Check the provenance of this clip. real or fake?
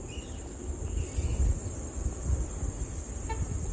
real